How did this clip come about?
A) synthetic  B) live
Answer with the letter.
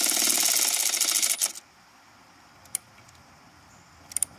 B